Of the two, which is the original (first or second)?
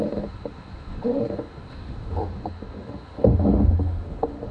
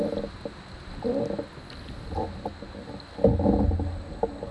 second